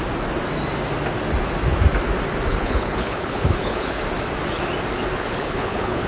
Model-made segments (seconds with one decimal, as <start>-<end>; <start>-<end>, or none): 2.5-4.0; 5.1-6.1